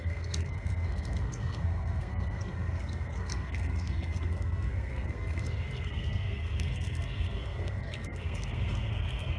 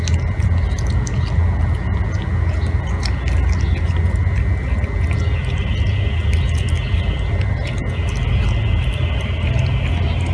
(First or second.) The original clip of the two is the second